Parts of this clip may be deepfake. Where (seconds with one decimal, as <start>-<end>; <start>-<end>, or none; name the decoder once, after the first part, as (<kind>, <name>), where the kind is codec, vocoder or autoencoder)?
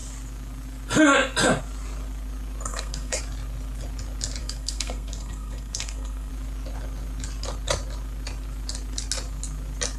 2.7-3.2 (codec, SNAC); 4.4-6.3